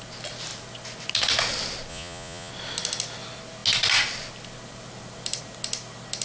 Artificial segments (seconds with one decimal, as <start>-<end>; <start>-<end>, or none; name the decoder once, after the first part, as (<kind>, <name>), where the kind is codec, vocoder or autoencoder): 1.9-2.5 (vocoder, Vocos)